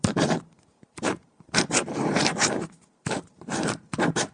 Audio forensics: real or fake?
fake